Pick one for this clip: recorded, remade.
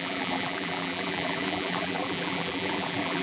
remade